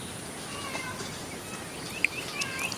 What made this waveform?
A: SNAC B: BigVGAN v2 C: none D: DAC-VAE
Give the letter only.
C